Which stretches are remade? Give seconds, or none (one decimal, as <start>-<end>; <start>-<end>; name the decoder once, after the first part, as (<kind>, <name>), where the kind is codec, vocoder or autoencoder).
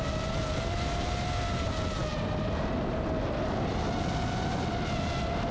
none